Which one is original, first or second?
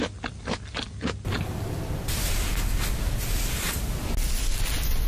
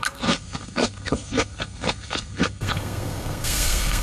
first